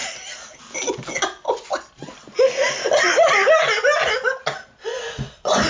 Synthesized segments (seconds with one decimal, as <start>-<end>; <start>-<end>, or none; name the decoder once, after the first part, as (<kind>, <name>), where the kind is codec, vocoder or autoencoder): 4.9-5.7 (vocoder, Vocos)